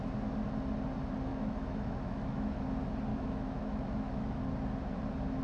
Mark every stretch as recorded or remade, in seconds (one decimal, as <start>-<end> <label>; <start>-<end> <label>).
0.0-1.3 recorded; 1.3-2.6 remade; 2.6-3.1 recorded; 3.1-4.4 remade; 4.4-5.4 recorded